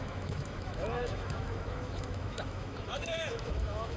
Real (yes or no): no